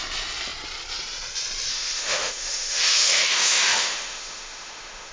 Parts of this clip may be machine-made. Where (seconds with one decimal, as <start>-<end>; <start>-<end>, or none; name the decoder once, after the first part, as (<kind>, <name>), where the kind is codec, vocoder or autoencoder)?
1.7-5.1 (autoencoder, DAC-VAE)